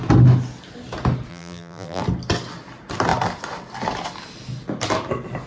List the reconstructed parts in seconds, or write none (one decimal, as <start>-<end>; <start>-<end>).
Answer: 1.3-2.0

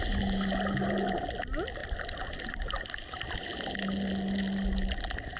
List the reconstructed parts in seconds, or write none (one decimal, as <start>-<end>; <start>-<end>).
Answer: none

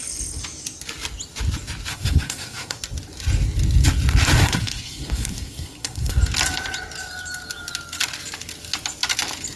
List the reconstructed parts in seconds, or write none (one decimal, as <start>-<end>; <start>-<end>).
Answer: 1.9-2.8; 4.4-6.2

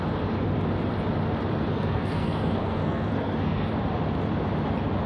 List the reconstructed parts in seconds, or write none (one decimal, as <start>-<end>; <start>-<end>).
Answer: 1.7-3.7